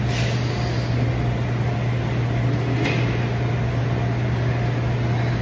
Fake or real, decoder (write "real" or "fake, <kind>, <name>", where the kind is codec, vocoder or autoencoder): real